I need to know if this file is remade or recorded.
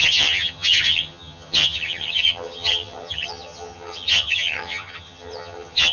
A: remade